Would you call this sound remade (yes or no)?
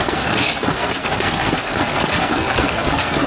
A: yes